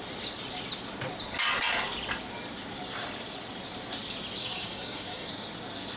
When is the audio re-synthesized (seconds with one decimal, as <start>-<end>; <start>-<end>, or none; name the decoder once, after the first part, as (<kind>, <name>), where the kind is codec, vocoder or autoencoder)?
4.4-5.3 (codec, DAC)